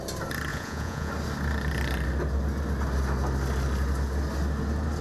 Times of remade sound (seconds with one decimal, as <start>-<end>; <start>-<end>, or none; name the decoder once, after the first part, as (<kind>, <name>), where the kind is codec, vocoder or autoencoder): 0.5-1.1 (vocoder, Vocos)